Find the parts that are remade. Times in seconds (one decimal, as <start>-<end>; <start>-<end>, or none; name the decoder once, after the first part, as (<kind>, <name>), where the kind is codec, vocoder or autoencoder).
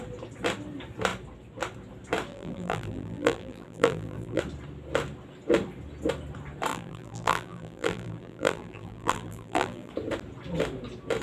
2.3-4.4 (vocoder, BigVGAN v2); 6.7-9.9